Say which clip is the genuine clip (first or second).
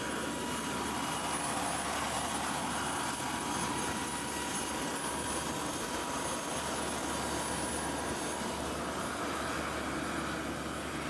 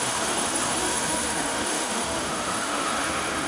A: first